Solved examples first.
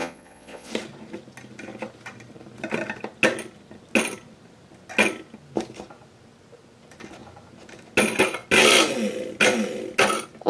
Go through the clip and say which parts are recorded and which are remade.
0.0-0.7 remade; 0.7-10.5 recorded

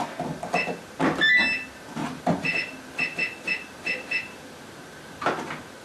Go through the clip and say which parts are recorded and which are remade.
0.0-2.0 recorded; 2.0-5.8 remade

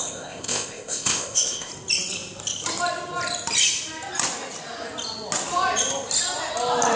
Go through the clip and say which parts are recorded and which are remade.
0.0-1.7 remade; 1.7-7.0 recorded

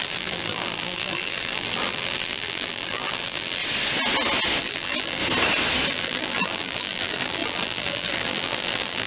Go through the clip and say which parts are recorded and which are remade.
0.0-3.6 remade; 3.6-4.6 recorded; 4.6-5.2 remade; 5.2-5.9 recorded; 5.9-9.1 remade

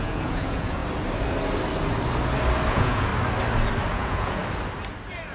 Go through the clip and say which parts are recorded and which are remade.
0.0-0.8 remade; 0.8-2.7 recorded; 2.7-3.1 remade; 3.1-3.9 recorded; 3.9-4.4 remade; 4.4-5.3 recorded

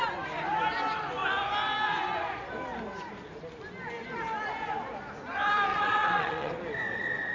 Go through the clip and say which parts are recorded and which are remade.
0.0-5.7 recorded; 5.7-6.5 remade; 6.5-7.3 recorded